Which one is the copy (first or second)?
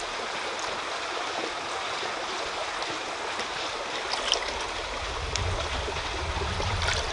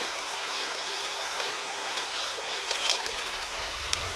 second